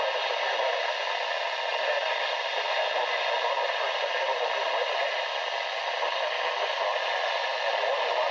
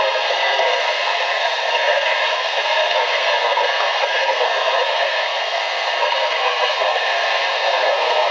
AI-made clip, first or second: second